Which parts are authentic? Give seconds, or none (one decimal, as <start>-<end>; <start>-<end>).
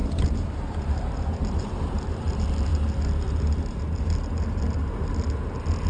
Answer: 1.7-5.9